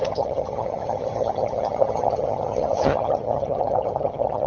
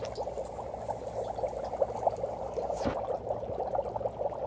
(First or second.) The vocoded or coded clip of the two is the first